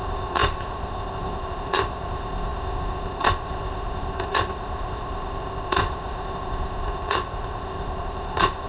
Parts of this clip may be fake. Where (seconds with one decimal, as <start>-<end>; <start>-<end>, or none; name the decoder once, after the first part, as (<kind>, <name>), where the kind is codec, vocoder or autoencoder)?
0.0-8.7 (codec, ZipCodec)